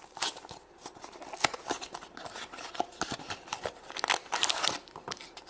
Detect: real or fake real